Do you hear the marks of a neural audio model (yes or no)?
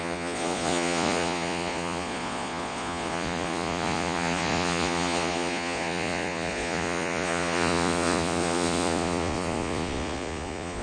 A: yes